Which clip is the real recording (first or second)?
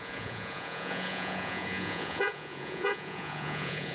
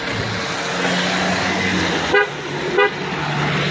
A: second